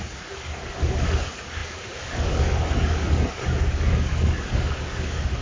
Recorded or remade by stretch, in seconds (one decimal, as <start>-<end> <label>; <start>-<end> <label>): 0.0-5.4 remade